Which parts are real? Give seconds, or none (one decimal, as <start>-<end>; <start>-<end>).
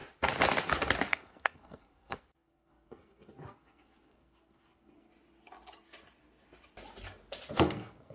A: 0.0-1.1; 5.1-7.5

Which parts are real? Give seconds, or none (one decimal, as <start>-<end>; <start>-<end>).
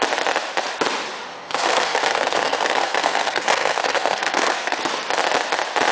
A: 0.0-1.3; 4.8-5.9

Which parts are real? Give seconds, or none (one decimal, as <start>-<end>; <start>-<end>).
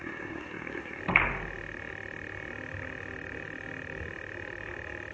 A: 1.0-5.1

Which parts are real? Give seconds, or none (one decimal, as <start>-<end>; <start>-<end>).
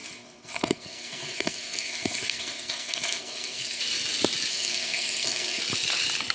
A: 3.8-4.5; 5.6-6.3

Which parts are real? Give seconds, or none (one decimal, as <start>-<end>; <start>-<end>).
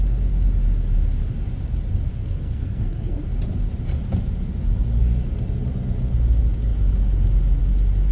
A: 0.0-2.1; 3.2-8.1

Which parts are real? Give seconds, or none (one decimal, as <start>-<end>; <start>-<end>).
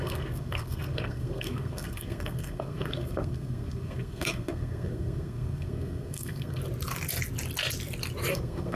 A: 6.6-8.3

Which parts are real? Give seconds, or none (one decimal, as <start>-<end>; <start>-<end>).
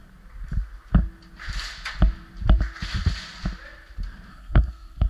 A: 0.0-4.3